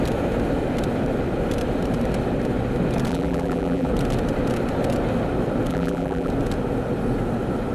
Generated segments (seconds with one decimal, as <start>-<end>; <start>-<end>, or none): 3.1-3.9; 5.7-6.3

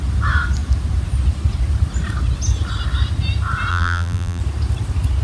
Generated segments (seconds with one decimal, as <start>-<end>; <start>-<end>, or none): 3.7-4.4

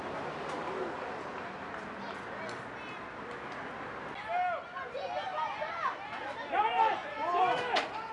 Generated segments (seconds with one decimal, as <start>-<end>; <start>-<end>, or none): none

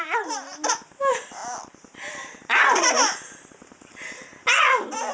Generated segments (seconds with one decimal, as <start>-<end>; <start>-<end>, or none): 0.0-1.4; 2.4-4.3

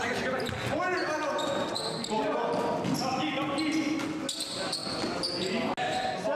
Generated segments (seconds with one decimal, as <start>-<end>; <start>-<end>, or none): none

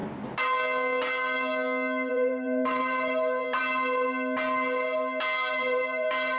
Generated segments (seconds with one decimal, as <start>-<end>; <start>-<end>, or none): 2.1-3.6; 5.5-6.4

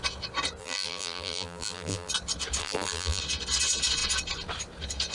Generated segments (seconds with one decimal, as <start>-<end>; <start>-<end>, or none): 0.6-2.1; 2.6-3.2